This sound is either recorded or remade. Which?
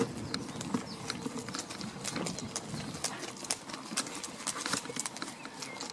recorded